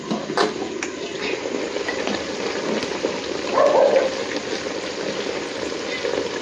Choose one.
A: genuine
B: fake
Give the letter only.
A